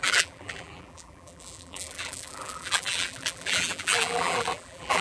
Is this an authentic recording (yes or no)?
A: no